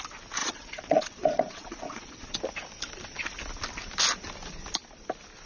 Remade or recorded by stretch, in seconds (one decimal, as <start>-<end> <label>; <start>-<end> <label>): 0.0-0.4 recorded; 0.4-2.4 remade; 2.4-5.5 recorded